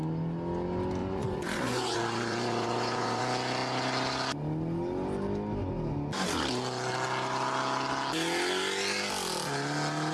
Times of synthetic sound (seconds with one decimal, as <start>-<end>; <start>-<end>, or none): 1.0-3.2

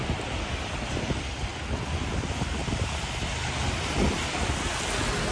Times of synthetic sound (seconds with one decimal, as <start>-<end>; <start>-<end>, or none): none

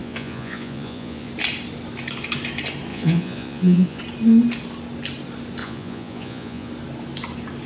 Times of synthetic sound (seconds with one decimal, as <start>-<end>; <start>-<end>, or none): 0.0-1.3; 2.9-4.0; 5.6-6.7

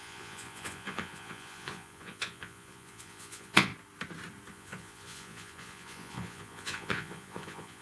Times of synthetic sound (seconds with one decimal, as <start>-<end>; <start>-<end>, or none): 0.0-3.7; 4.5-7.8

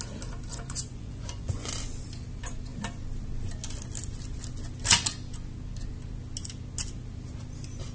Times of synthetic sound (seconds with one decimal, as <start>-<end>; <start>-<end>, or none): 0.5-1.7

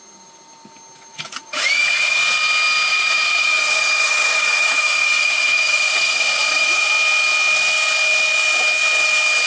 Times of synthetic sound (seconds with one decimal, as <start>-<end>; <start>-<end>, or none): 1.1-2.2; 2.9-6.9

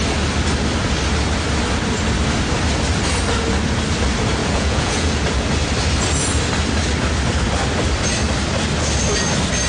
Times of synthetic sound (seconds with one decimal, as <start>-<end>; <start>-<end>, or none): 4.4-5.1